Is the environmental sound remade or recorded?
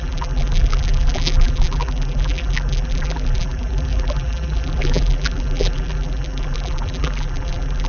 remade